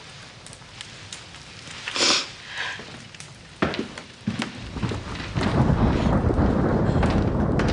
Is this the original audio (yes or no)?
yes